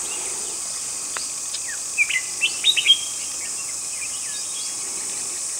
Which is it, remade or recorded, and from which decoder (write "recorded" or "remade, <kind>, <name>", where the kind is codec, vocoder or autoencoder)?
recorded